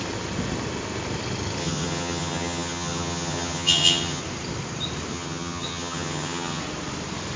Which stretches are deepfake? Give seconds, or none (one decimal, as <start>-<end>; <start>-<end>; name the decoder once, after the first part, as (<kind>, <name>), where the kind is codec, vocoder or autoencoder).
1.6-4.2 (vocoder, HiFi-GAN); 5.1-6.6